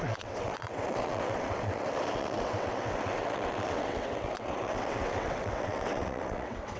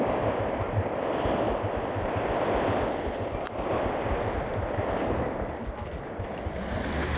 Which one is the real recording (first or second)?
second